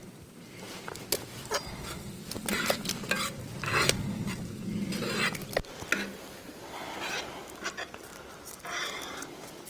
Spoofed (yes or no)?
no